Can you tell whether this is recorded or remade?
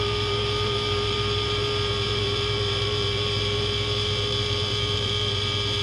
remade